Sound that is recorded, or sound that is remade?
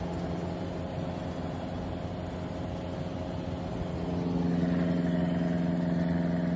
recorded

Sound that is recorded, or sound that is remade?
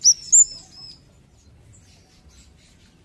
recorded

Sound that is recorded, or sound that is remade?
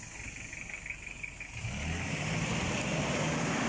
recorded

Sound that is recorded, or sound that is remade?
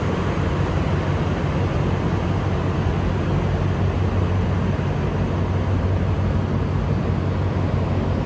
recorded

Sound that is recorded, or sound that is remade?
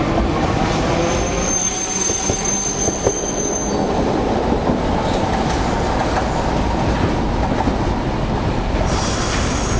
recorded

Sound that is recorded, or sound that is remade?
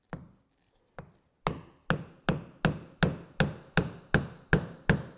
recorded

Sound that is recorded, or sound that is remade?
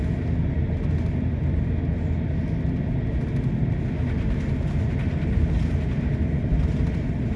recorded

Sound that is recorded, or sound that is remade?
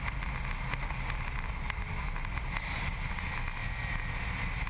recorded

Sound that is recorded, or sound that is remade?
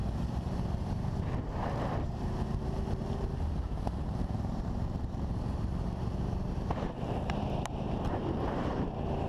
remade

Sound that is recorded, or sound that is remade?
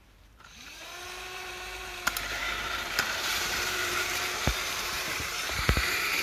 remade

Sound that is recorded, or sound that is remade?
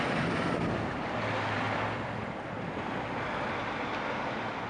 recorded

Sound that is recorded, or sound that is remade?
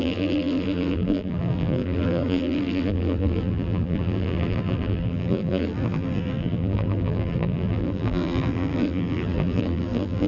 remade